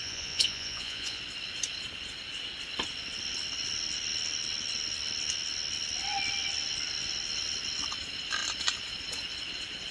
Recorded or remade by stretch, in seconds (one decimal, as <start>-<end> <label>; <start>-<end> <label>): 0.0-1.2 remade; 1.2-9.9 recorded